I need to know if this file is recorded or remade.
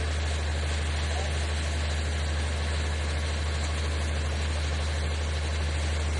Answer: recorded